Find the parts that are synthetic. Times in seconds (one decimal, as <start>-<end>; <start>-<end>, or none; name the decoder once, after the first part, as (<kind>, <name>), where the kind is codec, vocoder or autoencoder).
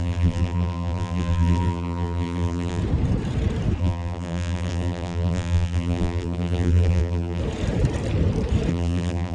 0.0-2.8 (vocoder, BigVGAN v2); 3.8-7.4; 8.7-9.3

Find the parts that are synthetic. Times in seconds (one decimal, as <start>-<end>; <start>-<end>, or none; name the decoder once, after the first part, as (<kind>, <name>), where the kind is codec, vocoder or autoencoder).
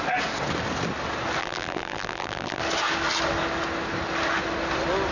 1.4-2.6 (vocoder, BigVGAN v2)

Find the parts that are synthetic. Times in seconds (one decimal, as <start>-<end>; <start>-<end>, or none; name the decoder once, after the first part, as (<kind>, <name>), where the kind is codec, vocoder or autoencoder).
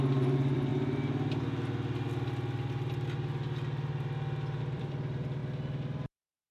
0.0-0.7 (vocoder, BigVGAN v2); 4.6-5.4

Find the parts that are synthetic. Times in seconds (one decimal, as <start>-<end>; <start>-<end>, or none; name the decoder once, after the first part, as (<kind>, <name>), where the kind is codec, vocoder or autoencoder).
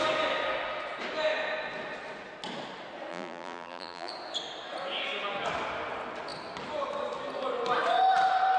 3.1-4.1 (vocoder, BigVGAN v2)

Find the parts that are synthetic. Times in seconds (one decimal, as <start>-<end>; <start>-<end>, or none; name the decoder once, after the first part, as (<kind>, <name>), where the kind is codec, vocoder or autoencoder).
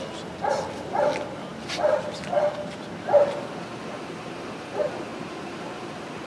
5.1-6.3 (vocoder, BigVGAN v2)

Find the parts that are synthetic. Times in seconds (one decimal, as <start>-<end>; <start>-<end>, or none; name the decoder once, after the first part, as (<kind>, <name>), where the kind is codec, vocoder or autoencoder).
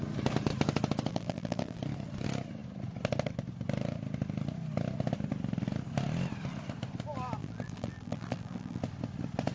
1.1-1.8 (vocoder, BigVGAN v2); 7.4-8.8